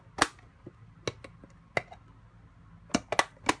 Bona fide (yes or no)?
yes